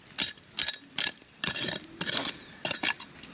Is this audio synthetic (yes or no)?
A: no